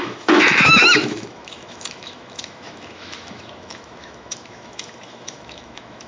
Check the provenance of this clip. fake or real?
fake